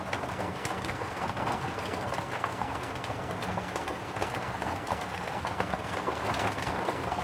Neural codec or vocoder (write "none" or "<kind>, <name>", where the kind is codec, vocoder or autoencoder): codec, SNAC